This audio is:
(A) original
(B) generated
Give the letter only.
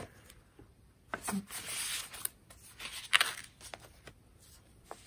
A